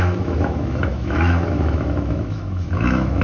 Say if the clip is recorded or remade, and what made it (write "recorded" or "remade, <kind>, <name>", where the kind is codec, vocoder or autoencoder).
remade, autoencoder, DAC-VAE